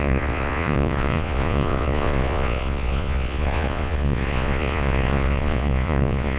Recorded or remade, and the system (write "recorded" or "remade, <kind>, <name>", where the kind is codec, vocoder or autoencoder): remade, vocoder, Vocos